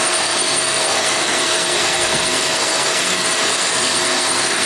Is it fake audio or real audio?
fake